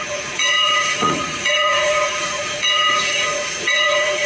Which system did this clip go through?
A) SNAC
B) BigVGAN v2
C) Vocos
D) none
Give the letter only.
C